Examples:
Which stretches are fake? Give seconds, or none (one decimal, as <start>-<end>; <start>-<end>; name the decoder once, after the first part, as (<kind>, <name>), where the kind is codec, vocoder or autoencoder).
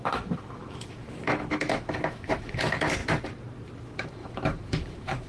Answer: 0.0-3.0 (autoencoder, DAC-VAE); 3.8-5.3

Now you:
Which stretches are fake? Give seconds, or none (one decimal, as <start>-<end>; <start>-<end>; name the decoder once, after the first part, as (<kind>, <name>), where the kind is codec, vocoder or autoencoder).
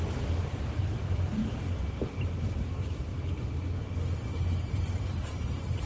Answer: 0.0-3.1 (vocoder, BigVGAN v2); 4.7-5.9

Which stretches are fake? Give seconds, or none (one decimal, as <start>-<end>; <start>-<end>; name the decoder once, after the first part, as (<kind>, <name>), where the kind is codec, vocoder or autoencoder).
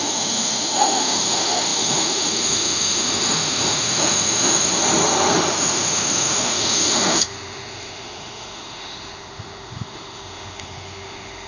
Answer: 0.0-4.8 (autoencoder, DAC-VAE); 5.5-11.5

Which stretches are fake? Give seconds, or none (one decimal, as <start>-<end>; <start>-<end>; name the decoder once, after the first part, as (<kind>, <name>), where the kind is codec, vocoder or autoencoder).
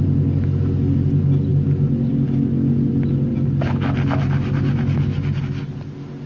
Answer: none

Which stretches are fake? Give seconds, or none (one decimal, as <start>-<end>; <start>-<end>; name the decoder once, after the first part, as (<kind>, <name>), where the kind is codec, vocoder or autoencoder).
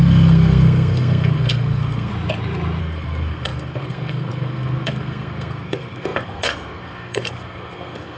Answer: 0.0-2.1 (codec, SNAC); 2.8-8.2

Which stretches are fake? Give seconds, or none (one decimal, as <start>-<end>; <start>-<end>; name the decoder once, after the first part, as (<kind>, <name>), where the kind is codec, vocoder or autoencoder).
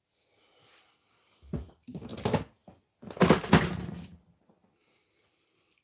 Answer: none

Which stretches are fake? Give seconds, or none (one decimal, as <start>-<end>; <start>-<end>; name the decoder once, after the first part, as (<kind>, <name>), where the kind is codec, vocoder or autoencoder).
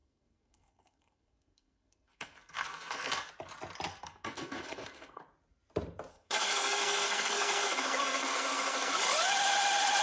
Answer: 0.0-3.3 (codec, SNAC); 3.9-5.2; 6.1-8.9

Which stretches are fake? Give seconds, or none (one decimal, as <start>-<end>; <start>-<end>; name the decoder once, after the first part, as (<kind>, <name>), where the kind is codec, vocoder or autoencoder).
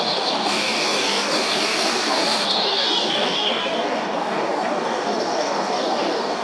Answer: 0.0-6.4 (codec, DAC)